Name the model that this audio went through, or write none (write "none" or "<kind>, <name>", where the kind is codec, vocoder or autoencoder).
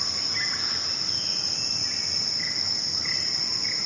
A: none